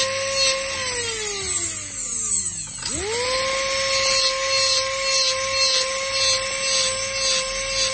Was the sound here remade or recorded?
recorded